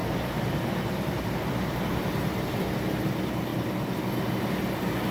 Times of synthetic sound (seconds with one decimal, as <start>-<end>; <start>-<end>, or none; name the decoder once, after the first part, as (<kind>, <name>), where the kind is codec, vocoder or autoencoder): 0.0-3.1 (vocoder, BigVGAN v2); 3.5-4.0